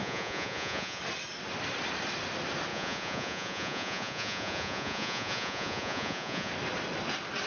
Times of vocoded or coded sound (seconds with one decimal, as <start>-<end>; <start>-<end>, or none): 0.0-1.0; 2.7-6.5